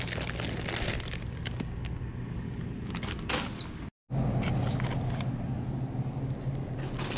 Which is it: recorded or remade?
recorded